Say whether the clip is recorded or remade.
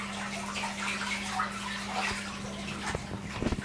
recorded